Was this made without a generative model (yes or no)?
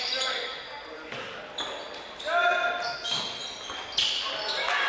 yes